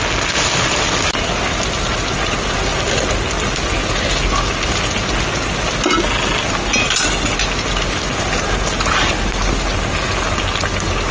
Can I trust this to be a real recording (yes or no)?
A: yes